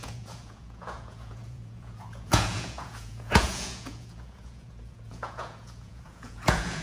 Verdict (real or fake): fake